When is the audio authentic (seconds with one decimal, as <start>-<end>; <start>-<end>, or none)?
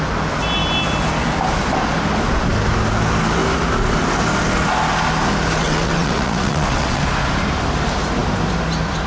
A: 0.0-5.6; 7.0-9.1